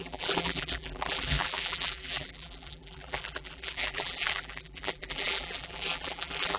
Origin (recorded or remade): remade